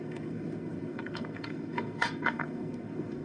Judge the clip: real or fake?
fake